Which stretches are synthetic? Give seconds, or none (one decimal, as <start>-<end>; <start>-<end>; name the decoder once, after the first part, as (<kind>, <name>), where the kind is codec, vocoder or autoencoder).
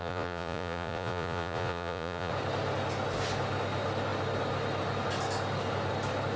0.0-2.3 (vocoder, Vocos)